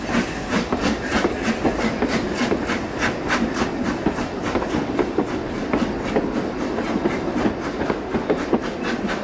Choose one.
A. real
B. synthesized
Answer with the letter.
A